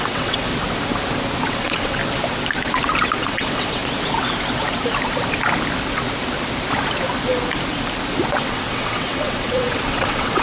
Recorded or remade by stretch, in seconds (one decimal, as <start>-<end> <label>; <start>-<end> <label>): 0.0-0.5 remade; 0.5-1.5 recorded; 1.5-2.0 remade; 2.0-3.2 recorded; 3.2-3.8 remade; 3.8-8.4 recorded; 8.4-10.4 remade